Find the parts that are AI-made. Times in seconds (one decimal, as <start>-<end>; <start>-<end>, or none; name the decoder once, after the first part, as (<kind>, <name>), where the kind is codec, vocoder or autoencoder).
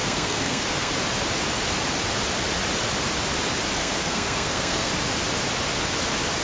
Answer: 0.0-0.9 (codec, SNAC); 3.8-4.9